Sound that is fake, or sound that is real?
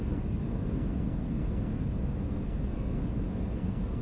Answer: fake